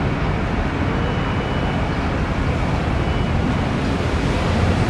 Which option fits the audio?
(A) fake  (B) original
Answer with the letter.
B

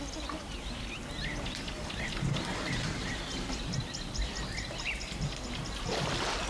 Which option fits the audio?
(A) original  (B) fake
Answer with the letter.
A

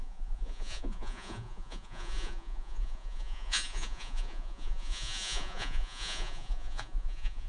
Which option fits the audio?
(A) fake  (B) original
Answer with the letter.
A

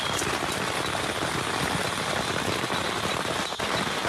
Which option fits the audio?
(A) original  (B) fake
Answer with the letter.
A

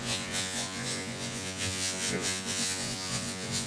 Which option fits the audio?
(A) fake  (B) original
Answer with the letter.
A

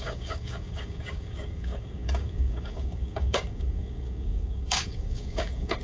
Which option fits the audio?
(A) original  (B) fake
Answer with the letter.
B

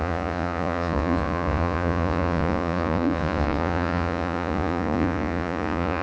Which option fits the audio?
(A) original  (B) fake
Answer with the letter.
B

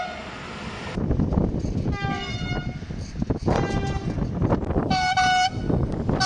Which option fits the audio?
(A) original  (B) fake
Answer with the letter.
A